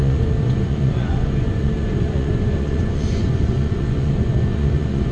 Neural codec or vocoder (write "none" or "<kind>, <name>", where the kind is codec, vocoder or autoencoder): vocoder, Vocos